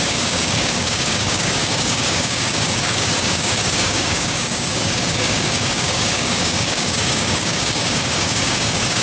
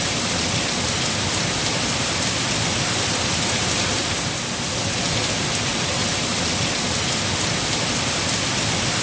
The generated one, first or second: first